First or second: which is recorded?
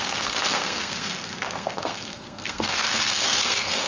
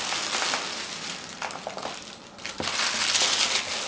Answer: second